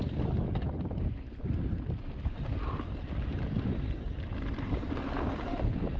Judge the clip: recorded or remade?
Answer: recorded